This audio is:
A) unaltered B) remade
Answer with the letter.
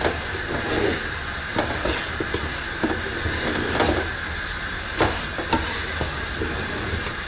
A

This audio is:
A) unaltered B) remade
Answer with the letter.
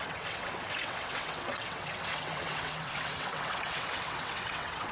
B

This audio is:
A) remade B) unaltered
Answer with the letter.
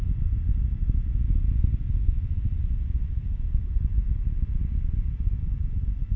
B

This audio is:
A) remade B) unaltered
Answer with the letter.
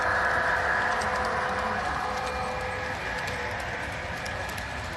B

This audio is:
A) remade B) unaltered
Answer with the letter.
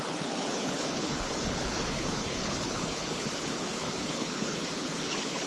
A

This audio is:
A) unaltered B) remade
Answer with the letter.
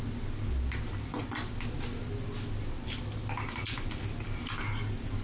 A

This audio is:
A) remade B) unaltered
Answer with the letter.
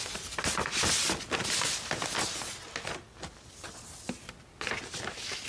B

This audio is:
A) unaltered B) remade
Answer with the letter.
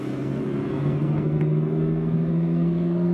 B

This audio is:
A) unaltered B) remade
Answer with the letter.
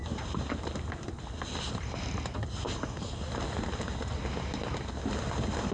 A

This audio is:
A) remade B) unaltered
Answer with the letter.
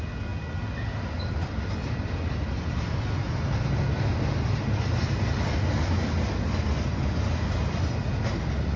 B